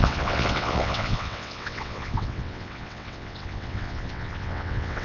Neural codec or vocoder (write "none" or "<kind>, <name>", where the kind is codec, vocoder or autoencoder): vocoder, WaveNeXt